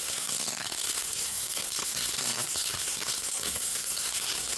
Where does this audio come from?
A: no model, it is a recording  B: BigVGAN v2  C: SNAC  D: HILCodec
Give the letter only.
C